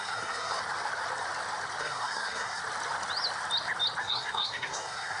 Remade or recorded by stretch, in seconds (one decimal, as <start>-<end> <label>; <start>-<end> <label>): 0.0-0.6 remade; 0.6-1.8 recorded; 1.8-2.6 remade; 2.6-4.0 recorded; 4.0-5.2 remade